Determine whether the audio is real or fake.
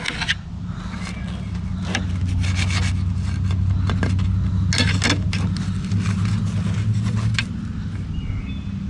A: real